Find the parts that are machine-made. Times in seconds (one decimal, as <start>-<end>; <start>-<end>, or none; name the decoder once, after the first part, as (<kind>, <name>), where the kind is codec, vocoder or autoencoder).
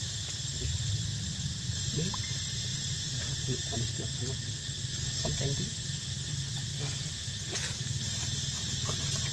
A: 2.7-4.8 (vocoder, BigVGAN v2)